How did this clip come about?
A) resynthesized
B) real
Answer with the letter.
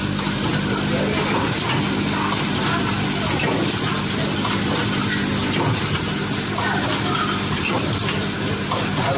B